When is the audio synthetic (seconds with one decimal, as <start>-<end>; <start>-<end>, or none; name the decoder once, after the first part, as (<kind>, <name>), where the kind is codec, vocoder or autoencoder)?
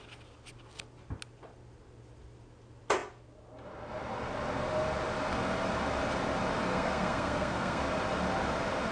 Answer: 6.7-7.8 (codec, SNAC)